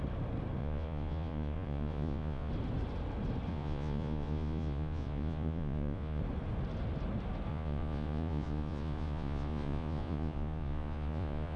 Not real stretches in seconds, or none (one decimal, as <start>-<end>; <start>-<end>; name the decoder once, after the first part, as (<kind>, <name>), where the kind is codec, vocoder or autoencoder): 0.6-2.5 (vocoder, Vocos); 3.5-6.2; 7.5-11.6